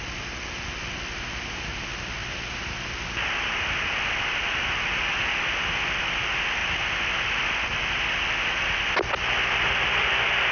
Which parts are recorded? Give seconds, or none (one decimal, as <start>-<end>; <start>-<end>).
0.0-10.5

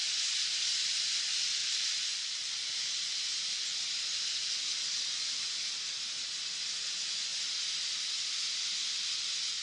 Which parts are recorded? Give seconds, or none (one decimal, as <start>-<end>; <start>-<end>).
0.0-1.6; 4.2-9.6